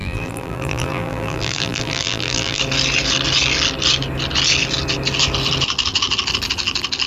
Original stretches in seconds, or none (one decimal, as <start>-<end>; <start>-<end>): 2.6-7.1